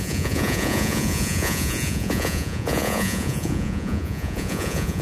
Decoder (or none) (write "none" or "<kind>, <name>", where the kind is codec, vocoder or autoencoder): vocoder, Vocos